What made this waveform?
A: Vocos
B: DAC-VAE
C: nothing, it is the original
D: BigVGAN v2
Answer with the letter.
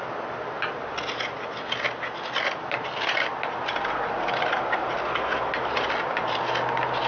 C